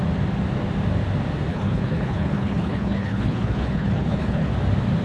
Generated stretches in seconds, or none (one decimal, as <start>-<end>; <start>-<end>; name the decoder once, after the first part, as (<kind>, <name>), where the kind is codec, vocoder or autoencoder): 1.5-4.5 (codec, HILCodec)